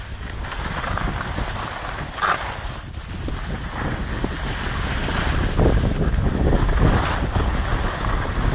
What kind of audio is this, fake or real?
real